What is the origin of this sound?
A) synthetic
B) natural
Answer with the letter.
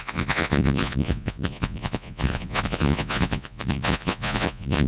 A